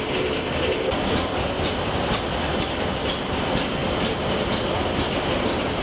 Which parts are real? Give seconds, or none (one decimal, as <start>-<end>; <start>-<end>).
0.0-5.8